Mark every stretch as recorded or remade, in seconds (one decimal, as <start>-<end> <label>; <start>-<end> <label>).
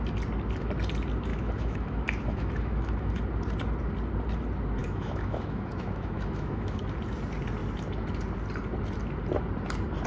0.0-1.3 recorded; 1.3-3.2 remade; 3.2-4.8 recorded; 4.8-6.8 remade; 6.8-10.1 recorded